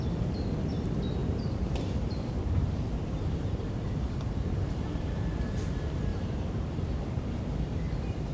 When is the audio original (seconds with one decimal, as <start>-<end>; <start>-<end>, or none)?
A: 0.0-1.2; 5.4-6.1